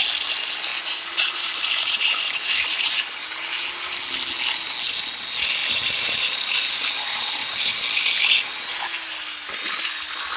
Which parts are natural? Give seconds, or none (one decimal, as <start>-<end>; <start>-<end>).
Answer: 0.0-0.7; 3.2-5.6; 7.6-10.4